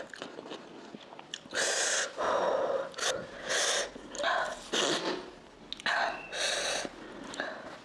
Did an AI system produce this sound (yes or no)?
no